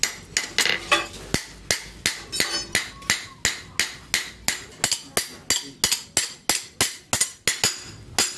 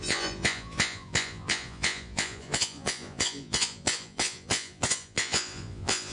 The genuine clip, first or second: first